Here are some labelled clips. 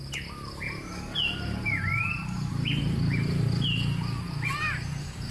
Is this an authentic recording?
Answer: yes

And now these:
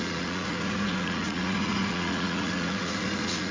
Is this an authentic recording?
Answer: no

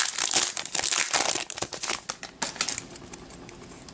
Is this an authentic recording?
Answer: yes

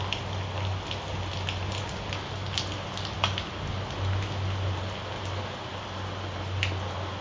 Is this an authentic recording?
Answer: yes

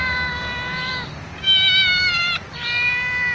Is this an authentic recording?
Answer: yes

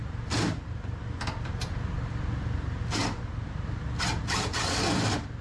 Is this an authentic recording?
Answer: yes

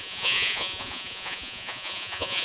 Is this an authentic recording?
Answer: no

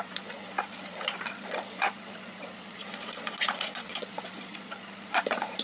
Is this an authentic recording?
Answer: no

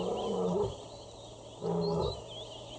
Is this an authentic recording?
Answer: yes